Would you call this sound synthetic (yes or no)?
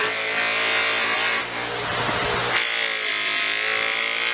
no